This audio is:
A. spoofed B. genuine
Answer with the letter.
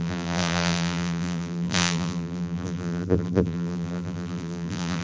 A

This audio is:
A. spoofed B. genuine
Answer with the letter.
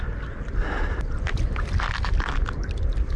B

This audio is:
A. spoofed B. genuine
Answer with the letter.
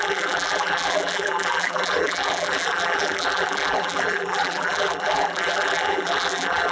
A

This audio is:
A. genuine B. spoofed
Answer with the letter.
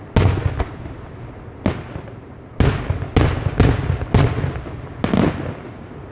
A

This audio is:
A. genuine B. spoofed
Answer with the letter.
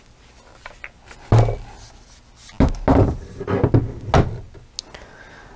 A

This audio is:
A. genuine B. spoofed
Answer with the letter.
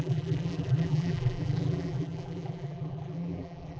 B